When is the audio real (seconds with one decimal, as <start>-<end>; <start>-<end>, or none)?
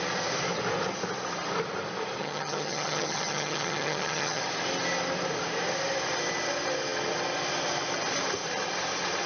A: 0.0-2.2; 4.4-9.3